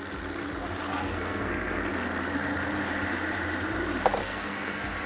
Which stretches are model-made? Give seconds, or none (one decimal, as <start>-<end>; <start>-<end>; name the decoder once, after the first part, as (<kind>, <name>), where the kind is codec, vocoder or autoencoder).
0.9-1.8 (codec, SNAC); 4.2-5.1

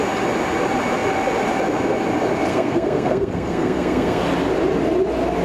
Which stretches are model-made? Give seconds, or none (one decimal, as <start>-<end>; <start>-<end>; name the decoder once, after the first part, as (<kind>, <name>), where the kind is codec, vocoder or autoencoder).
2.5-4.2 (codec, SNAC)

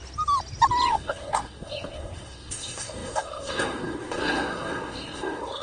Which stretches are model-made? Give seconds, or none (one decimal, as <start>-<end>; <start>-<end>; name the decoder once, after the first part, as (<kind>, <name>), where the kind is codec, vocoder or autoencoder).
0.9-5.6 (codec, SNAC)